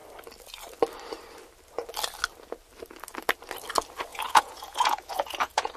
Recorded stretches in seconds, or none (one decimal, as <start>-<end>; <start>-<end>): 0.0-4.1